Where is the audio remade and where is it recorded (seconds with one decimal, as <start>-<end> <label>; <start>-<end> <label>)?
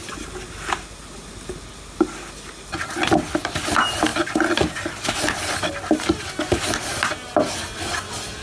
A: 0.0-8.4 recorded